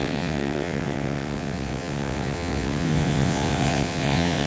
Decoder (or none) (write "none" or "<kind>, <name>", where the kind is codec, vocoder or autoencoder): vocoder, WaveNeXt